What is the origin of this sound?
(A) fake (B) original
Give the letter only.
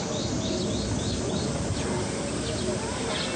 B